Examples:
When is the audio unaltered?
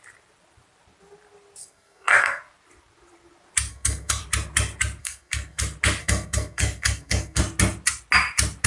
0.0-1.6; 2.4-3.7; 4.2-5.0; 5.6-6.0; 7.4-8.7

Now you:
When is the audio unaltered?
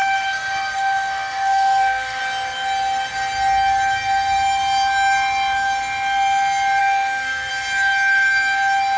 2.2-6.8; 7.5-9.0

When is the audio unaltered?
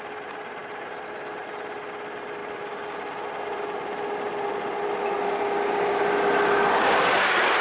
0.0-7.6